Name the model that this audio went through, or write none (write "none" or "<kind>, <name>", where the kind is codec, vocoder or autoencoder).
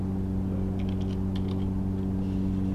none